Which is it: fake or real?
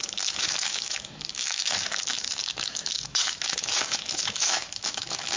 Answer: fake